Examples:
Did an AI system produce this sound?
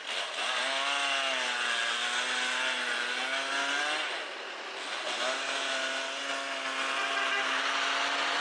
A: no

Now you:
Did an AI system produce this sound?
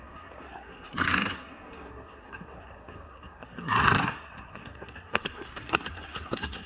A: yes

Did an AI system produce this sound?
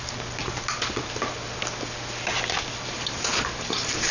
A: no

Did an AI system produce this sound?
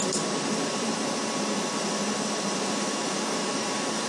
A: yes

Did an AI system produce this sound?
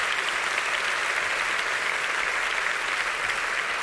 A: no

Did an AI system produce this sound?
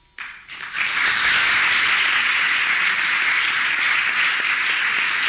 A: no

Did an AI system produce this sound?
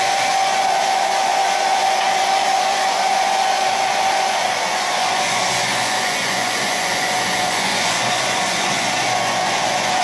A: yes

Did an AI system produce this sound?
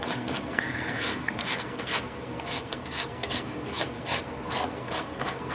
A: yes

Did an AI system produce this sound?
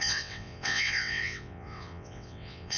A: yes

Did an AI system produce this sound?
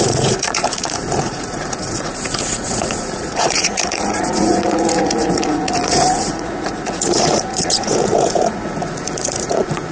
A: yes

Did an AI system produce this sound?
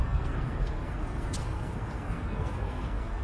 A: yes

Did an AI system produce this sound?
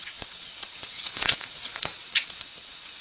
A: yes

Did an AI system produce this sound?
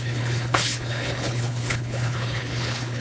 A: yes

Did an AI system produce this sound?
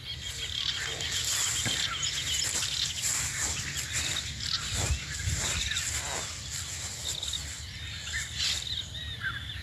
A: no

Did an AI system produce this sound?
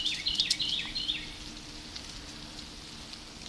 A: no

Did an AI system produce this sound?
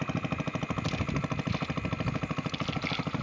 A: no